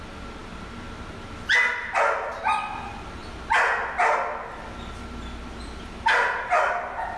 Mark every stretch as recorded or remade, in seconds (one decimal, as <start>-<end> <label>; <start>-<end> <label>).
0.0-7.2 recorded